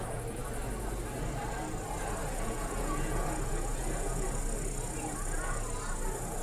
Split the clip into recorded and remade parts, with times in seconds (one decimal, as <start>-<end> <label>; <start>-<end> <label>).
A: 0.0-2.2 recorded; 2.2-4.4 remade; 4.4-6.4 recorded